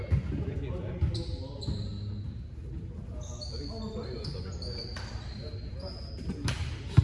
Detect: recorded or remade recorded